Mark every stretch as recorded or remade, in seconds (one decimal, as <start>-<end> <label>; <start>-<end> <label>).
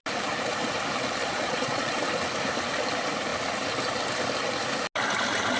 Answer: 0.0-1.2 recorded; 1.2-2.1 remade; 2.1-5.6 recorded